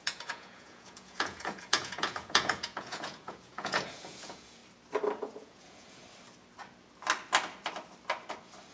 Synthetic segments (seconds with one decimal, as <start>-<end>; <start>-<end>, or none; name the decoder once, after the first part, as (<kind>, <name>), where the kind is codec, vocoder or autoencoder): 0.0-4.6 (vocoder, Vocos); 5.2-6.0